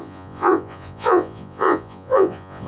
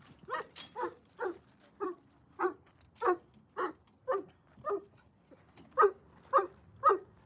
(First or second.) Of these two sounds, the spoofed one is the first